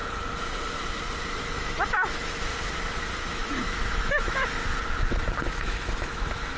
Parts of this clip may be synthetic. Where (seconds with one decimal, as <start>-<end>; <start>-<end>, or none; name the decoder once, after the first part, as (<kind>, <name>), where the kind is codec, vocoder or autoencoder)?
1.3-2.5 (autoencoder, DAC-VAE); 3.1-4.6; 5.1-6.6